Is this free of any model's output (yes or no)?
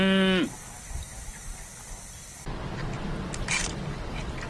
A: yes